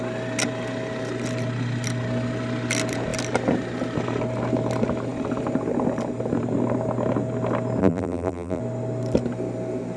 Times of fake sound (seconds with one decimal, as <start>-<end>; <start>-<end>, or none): 7.8-8.6